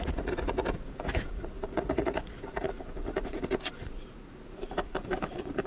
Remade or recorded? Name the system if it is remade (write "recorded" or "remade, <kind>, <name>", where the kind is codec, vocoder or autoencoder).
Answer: remade, vocoder, Vocos